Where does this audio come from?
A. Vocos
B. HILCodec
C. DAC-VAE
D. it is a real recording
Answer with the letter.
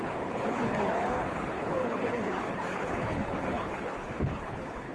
B